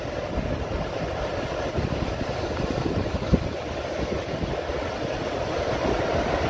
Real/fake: real